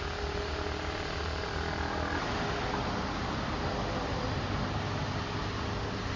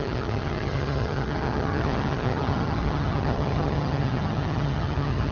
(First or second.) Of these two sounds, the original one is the first